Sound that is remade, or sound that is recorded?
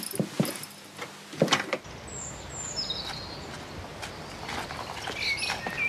recorded